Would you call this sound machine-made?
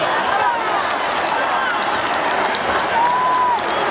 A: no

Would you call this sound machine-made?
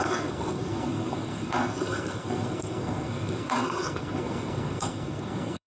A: yes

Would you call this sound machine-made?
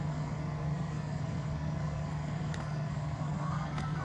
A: yes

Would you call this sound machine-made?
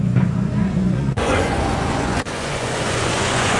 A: yes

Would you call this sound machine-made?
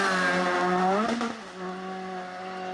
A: no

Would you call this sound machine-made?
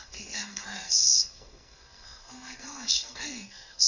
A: yes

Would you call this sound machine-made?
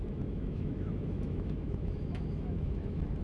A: yes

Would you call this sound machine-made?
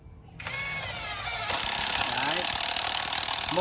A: no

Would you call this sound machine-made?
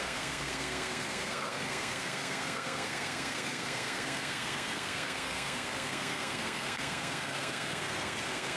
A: yes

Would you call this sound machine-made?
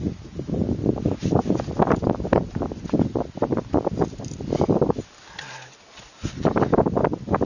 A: no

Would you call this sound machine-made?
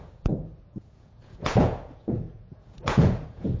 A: yes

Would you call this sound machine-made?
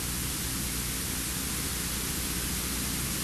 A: no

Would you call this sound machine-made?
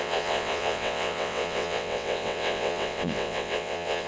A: yes